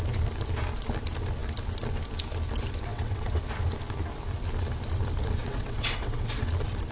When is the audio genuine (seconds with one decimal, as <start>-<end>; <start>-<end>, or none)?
0.0-2.9; 3.4-5.4; 6.5-6.9